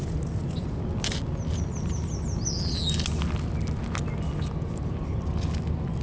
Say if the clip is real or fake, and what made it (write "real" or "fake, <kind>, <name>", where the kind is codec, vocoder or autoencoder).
real